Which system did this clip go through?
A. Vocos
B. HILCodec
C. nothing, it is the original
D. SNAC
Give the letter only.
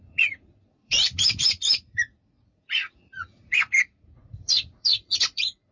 A